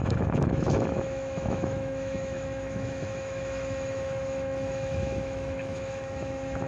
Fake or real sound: fake